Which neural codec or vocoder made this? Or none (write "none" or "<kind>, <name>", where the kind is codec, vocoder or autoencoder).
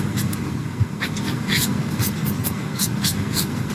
codec, SNAC